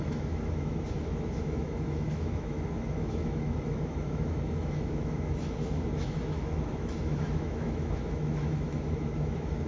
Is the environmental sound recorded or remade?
remade